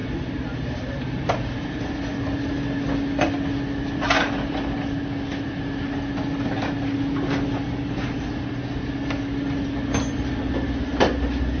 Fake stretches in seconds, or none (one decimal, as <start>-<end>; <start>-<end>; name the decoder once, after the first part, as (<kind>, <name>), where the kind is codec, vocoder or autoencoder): 0.0-1.8 (vocoder, BigVGAN v2)